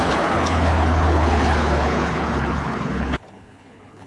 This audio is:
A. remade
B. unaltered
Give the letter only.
A